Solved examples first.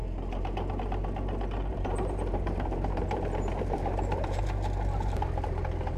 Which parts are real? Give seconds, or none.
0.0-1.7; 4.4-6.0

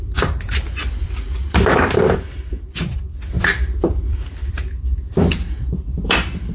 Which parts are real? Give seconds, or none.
none

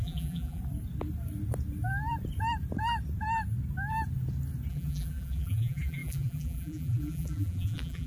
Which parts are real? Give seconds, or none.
0.6-4.7

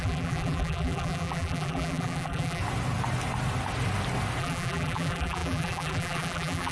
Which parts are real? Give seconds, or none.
2.6-4.4

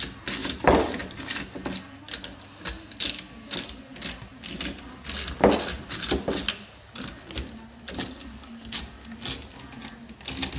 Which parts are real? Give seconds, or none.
0.0-0.4; 1.4-10.6